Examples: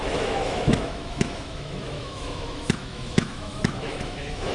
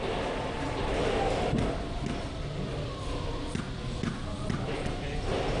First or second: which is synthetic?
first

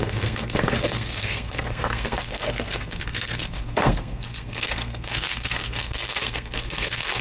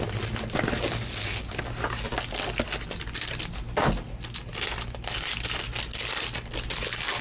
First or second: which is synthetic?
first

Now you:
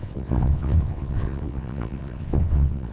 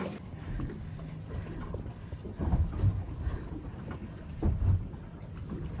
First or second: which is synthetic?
first